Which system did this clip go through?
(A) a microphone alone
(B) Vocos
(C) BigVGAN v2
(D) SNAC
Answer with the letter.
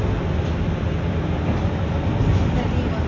A